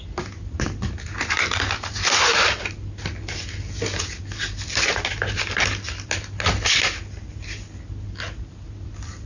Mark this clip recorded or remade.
recorded